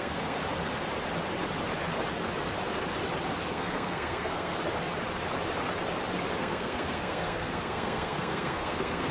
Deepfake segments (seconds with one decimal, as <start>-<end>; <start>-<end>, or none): 0.0-0.4; 3.5-4.5; 6.4-9.1